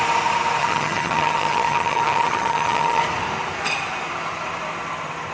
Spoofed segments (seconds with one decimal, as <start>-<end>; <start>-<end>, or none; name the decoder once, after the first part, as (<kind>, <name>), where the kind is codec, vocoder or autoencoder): 0.6-3.0 (vocoder, HiFi-GAN)